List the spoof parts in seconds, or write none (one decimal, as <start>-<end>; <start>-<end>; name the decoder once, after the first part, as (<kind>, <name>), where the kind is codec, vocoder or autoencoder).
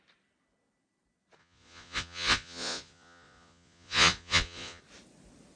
1.4-4.8 (vocoder, Vocos)